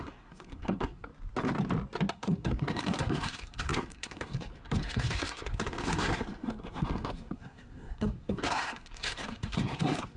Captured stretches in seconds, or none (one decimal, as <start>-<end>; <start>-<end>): 1.1-2.1